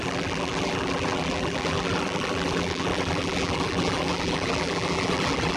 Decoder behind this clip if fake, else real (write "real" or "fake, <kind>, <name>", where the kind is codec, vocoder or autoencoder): fake, vocoder, BigVGAN v2